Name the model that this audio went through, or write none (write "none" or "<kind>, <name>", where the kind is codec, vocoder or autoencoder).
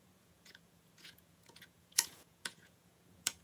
vocoder, Vocos